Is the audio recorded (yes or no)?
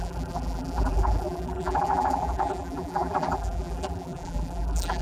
no